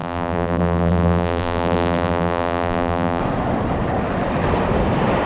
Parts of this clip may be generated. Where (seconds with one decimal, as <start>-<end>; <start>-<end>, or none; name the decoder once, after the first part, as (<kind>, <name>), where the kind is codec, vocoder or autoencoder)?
0.0-3.2 (vocoder, BigVGAN v2)